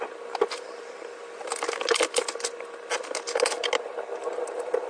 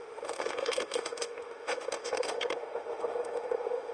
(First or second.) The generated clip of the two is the second